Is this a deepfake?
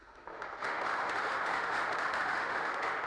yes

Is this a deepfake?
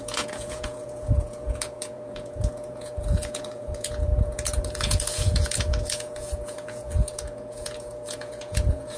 yes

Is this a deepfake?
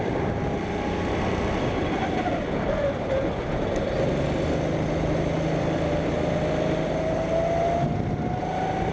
no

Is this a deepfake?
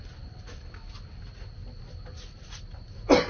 no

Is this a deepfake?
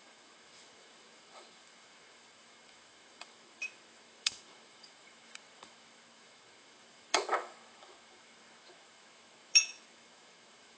yes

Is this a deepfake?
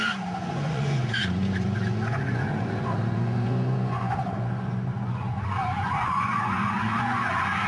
yes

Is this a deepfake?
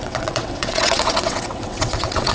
yes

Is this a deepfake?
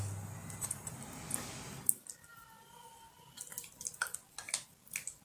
no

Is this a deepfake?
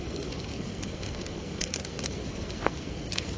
yes